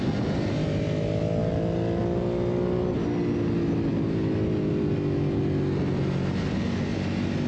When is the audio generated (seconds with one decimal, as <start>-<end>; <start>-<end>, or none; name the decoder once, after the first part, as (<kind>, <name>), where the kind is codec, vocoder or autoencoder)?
none